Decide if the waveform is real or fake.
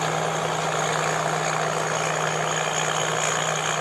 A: real